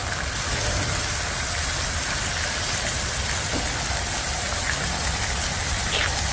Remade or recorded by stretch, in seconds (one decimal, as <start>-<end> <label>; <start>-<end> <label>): 0.0-6.3 recorded